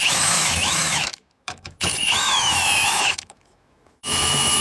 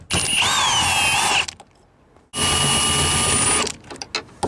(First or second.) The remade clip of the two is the first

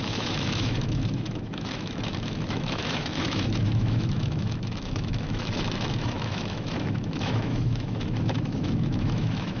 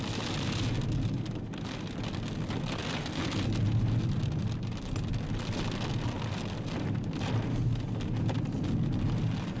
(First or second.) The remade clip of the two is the first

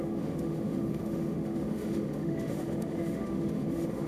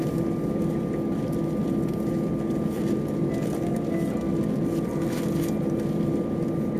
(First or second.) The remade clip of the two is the first